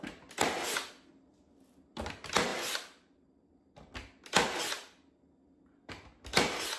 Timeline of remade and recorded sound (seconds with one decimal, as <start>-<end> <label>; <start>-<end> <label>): 0.0-6.8 recorded